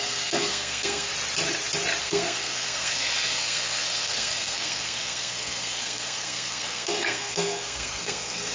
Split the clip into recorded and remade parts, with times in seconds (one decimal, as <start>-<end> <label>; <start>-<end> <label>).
0.0-1.1 remade; 1.1-2.0 recorded; 2.0-8.5 remade